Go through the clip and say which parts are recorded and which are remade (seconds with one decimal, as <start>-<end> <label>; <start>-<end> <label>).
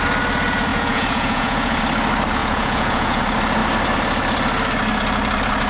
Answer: 0.0-0.7 recorded; 0.7-1.8 remade; 1.8-2.4 recorded; 2.4-3.2 remade; 3.2-5.7 recorded